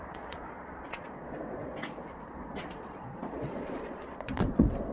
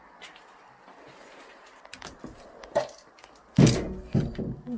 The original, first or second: second